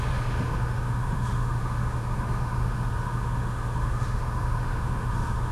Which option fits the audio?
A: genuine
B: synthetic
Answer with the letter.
B